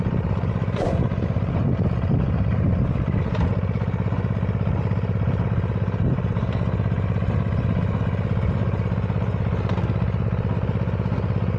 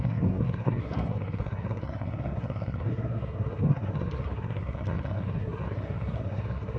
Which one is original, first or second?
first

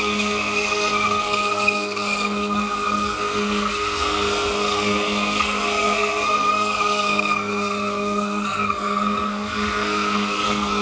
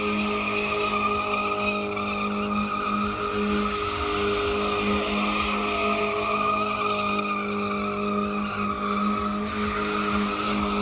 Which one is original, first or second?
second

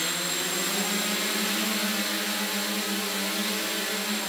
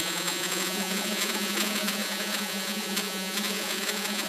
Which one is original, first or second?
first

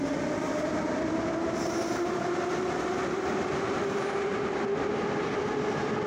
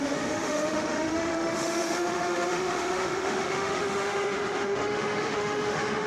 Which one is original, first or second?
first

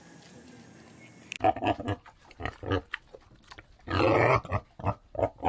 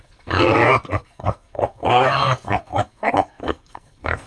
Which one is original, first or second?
first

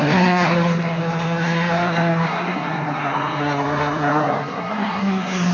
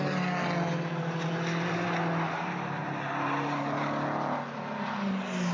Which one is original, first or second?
second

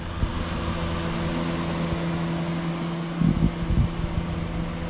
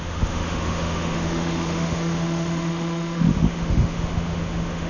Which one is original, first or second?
first